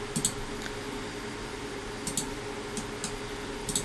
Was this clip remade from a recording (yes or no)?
no